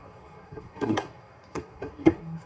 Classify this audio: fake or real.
fake